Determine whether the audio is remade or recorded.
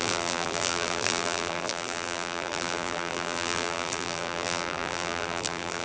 remade